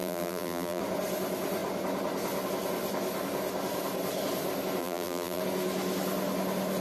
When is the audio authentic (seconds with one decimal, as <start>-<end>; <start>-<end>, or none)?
0.8-4.8; 5.4-6.8

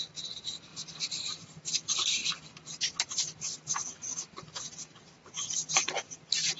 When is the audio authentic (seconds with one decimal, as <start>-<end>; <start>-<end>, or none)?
0.0-6.6